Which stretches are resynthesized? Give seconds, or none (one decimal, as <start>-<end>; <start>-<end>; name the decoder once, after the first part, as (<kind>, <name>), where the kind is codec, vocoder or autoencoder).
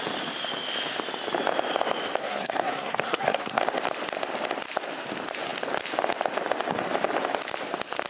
2.2-3.6 (codec, SNAC)